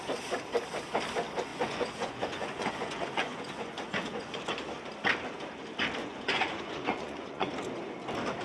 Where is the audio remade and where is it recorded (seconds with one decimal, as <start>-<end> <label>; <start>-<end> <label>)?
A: 0.0-1.5 recorded; 1.5-4.4 remade; 4.4-6.0 recorded; 6.0-7.5 remade; 7.5-8.4 recorded